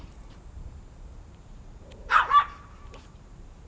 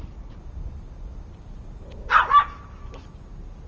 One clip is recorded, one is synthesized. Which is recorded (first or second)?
second